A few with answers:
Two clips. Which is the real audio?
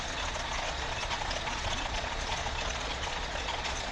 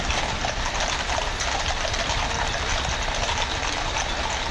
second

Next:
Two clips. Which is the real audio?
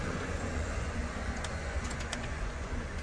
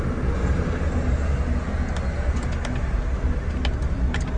second